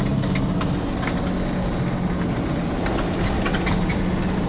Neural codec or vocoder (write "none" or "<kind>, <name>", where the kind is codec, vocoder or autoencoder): none